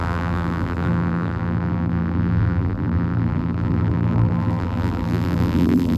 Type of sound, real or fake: fake